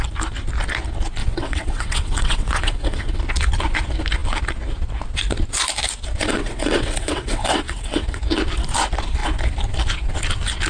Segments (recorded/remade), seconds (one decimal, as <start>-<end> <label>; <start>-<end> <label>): 0.0-1.2 recorded; 1.2-3.2 remade; 3.2-6.2 recorded; 6.2-8.2 remade; 8.2-10.7 recorded